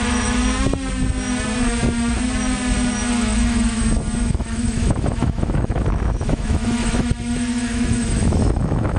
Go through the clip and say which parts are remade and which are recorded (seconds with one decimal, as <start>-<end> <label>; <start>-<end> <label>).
0.0-0.4 remade; 0.4-3.1 recorded; 3.1-3.8 remade; 3.8-4.3 recorded; 4.3-9.0 remade